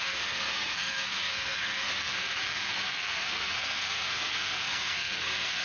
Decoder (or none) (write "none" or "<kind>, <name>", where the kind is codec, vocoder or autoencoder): codec, SNAC